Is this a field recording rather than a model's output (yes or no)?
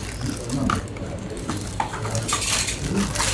yes